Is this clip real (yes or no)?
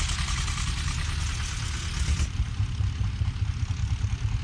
yes